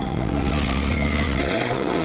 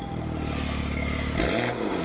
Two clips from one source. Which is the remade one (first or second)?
first